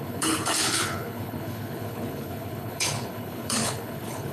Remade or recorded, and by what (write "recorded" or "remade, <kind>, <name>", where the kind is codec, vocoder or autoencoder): remade, codec, HILCodec